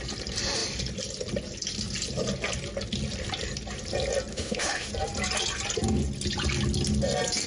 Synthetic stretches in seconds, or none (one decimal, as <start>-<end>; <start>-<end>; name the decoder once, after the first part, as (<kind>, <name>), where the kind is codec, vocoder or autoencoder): 4.3-4.9 (autoencoder, DAC-VAE)

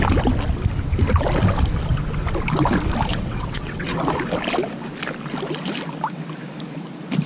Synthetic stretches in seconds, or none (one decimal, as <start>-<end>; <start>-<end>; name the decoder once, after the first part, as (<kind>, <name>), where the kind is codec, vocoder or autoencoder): 3.1-4.0 (vocoder, WaveNeXt)

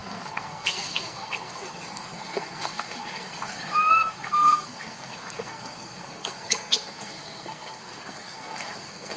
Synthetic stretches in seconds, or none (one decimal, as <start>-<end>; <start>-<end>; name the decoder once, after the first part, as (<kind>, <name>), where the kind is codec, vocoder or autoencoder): 0.0-9.2 (codec, SNAC)

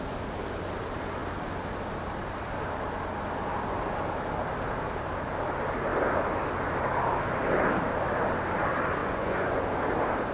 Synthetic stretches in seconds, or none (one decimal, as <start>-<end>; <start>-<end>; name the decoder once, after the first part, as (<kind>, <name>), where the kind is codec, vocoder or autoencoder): 9.0-9.6 (vocoder, Vocos)